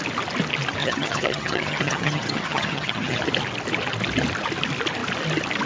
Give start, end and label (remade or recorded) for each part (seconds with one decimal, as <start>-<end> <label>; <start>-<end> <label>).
0.0-0.8 recorded; 0.8-3.2 remade; 3.2-5.7 recorded